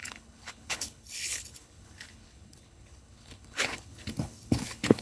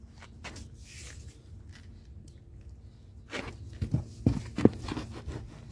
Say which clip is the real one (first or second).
second